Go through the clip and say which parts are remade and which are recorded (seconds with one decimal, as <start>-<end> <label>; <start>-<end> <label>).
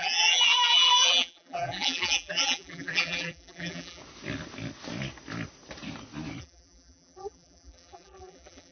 0.0-4.0 remade; 4.0-6.4 recorded; 6.4-8.7 remade